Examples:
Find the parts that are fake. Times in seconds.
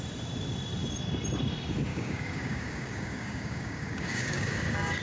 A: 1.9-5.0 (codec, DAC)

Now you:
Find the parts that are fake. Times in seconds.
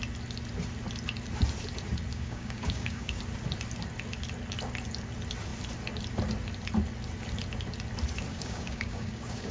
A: 2.1-3.2 (codec, DAC); 8.3-9.5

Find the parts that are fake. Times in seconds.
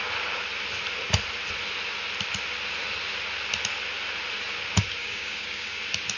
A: 5.0-5.8 (codec, DAC)